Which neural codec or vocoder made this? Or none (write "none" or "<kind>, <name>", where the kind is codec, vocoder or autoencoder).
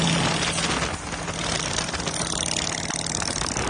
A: none